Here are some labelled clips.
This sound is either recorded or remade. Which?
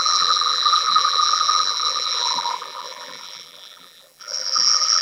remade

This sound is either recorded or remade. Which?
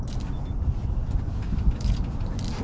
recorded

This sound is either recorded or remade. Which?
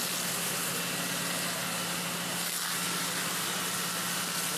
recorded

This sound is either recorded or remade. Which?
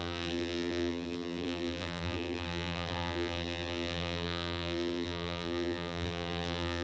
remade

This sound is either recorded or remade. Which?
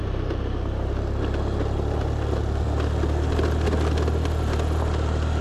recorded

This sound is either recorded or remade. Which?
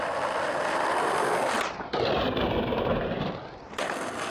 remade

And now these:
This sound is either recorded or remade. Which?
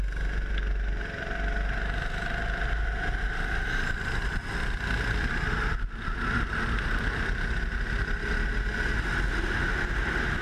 recorded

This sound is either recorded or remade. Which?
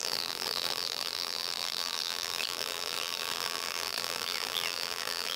remade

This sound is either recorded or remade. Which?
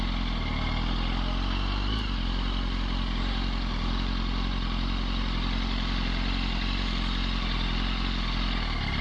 recorded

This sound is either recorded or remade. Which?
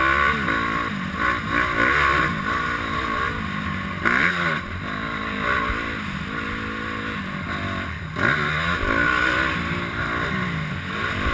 recorded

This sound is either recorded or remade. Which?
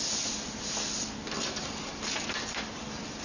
remade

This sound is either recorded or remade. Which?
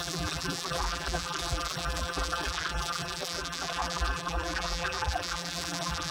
remade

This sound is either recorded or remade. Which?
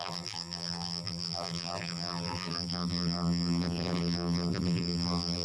remade